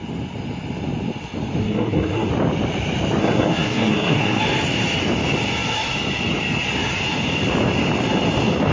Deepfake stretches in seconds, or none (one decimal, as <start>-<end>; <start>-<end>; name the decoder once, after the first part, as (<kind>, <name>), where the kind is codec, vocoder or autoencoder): 1.6-2.3 (codec, SNAC); 3.2-4.4